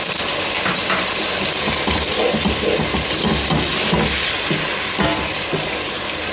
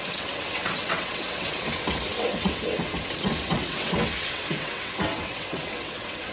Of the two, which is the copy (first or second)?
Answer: second